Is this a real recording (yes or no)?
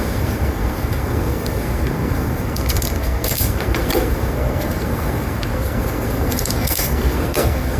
no